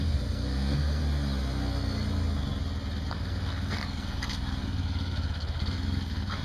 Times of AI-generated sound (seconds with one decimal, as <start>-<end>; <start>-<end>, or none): 0.0-1.0; 3.1-6.4